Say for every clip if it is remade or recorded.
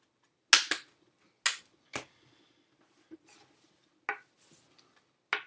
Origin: recorded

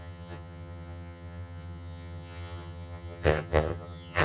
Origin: remade